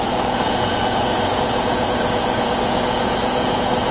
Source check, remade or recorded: remade